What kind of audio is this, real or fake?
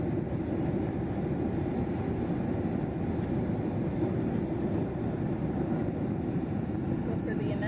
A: real